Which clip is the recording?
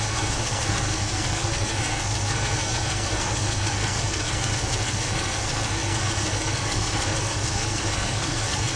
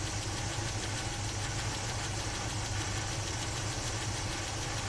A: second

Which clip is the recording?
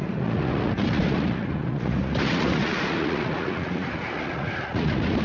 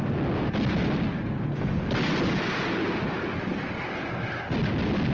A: second